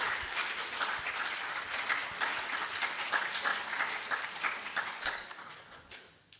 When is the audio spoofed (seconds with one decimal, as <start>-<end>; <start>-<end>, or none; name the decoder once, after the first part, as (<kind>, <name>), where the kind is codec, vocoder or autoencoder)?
0.0-0.4 (codec, DAC); 2.8-3.5; 4.8-6.4